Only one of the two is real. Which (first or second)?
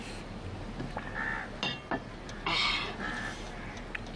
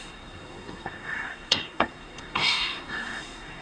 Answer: first